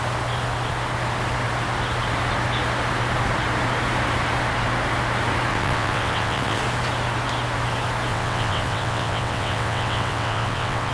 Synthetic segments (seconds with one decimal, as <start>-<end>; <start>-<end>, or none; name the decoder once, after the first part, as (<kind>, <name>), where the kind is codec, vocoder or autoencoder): 5.5-6.6 (vocoder, WaveNeXt); 8.1-10.9